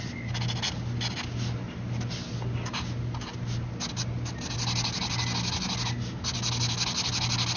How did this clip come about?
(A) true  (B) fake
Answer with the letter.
A